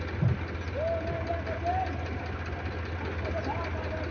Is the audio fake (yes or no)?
no